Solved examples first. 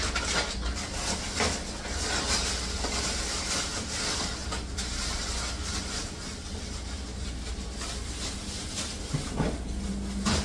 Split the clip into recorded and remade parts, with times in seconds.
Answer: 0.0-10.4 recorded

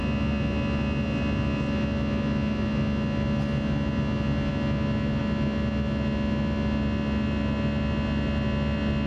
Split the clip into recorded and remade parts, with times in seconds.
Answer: 0.0-9.1 recorded

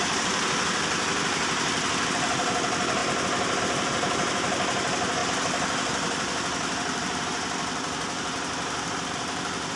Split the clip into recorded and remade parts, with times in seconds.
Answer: 0.0-5.2 recorded; 5.2-9.2 remade; 9.2-9.8 recorded

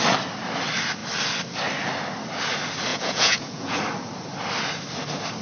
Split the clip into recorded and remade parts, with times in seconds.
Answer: 0.0-2.9 recorded; 2.9-3.8 remade; 3.8-5.4 recorded

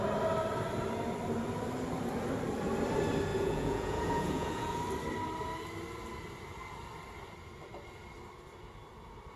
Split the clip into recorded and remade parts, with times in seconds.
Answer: 0.0-3.3 recorded; 3.3-4.8 remade; 4.8-9.4 recorded